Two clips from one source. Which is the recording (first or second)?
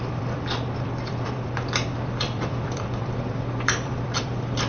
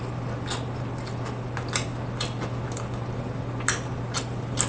second